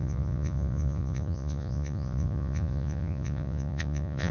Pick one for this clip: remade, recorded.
remade